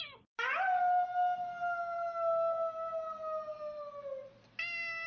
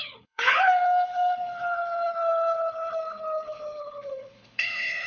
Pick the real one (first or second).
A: first